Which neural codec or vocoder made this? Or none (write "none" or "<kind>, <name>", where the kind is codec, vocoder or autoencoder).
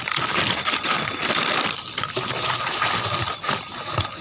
none